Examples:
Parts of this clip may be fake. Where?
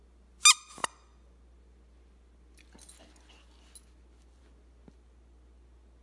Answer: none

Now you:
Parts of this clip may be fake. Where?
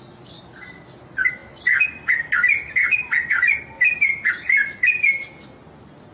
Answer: none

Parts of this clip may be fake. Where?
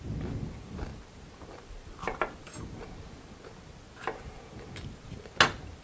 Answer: none